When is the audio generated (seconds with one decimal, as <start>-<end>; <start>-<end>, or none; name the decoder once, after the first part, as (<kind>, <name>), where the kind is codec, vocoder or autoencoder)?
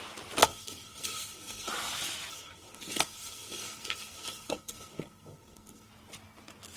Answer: 0.4-1.7 (codec, SNAC); 2.3-5.9